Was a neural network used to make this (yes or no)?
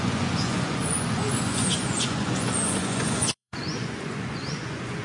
yes